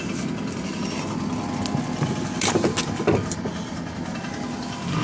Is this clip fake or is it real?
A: real